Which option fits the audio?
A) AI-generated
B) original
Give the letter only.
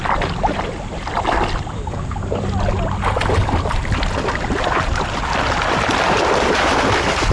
B